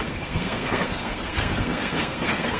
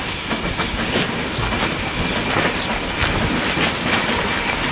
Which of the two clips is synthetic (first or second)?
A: first